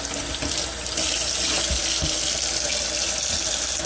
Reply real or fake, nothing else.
real